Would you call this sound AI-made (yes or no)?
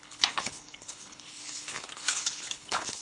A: yes